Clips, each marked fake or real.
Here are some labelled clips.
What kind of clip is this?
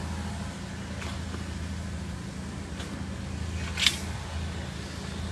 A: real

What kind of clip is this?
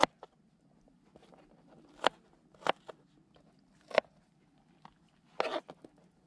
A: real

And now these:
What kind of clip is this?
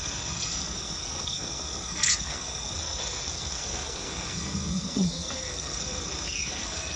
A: fake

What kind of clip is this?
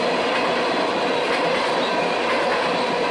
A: real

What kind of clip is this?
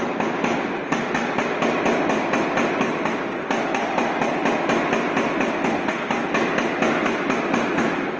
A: fake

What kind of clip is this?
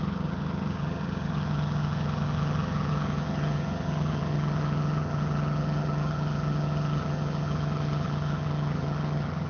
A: fake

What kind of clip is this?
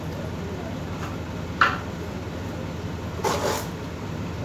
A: real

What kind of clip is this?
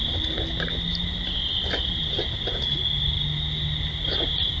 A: real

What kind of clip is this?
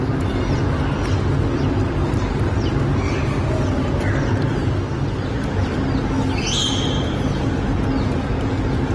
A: real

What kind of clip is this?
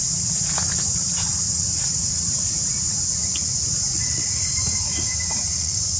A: fake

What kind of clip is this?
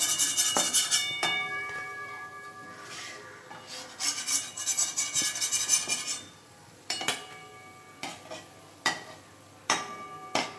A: fake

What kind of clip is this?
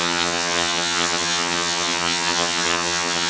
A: fake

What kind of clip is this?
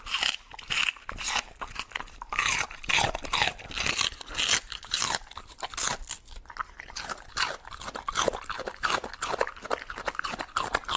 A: real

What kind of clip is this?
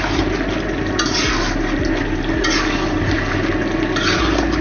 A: real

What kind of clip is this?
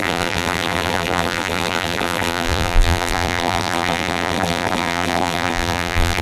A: fake